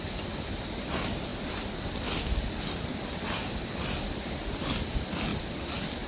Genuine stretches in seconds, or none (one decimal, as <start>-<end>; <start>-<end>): 0.0-6.1